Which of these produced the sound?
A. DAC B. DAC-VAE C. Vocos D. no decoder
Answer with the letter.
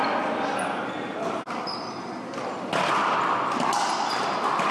D